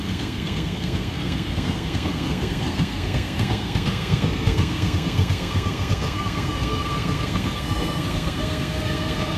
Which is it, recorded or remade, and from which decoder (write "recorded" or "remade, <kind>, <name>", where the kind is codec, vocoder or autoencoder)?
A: remade, codec, SNAC